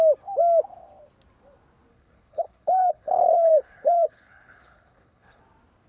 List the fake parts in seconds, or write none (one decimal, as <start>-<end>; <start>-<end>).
1.9-5.4